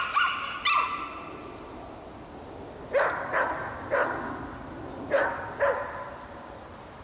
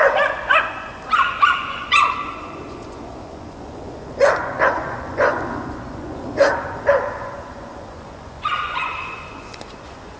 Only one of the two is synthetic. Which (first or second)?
second